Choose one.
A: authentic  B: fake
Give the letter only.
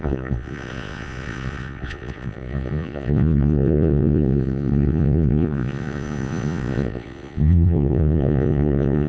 B